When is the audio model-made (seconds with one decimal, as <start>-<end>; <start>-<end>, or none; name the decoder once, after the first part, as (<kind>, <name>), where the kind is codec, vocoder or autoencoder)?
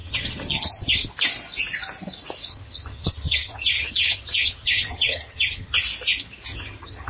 0.0-1.1 (vocoder, HiFi-GAN); 2.5-5.8; 6.5-7.1